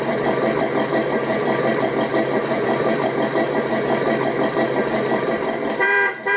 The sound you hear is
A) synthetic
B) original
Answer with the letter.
A